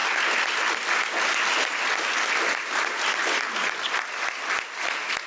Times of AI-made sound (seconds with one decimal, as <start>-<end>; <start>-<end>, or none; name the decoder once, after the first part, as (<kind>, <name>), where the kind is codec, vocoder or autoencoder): none